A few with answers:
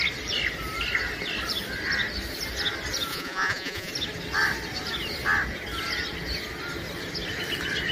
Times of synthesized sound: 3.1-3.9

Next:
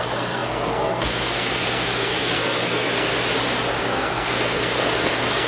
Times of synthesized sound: 0.0-3.1; 3.8-5.5

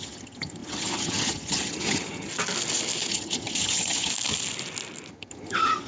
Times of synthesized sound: 0.0-2.3; 3.1-4.1; 5.1-5.9

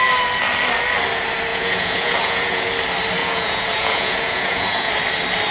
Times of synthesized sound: 1.5-2.7; 3.2-4.9

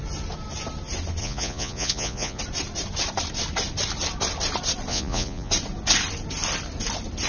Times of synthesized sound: 1.2-2.4; 4.9-5.5

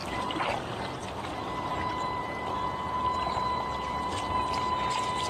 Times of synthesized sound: 0.0-0.6; 1.7-2.5; 3.0-4.5

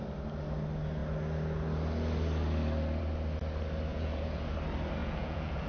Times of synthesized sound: 3.9-4.5; 5.0-5.7